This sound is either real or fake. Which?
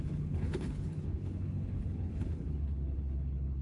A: fake